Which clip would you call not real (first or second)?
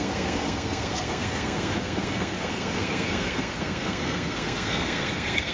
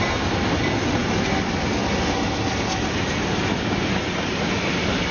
first